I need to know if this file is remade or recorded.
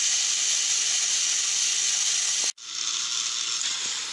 recorded